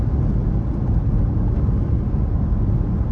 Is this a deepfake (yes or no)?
no